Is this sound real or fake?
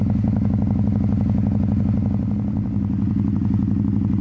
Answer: real